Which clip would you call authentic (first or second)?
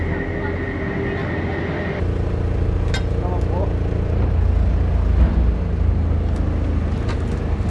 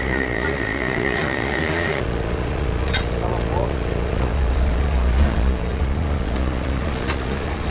first